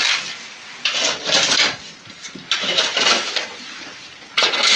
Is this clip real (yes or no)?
yes